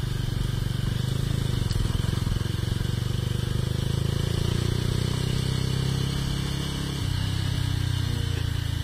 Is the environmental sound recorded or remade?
recorded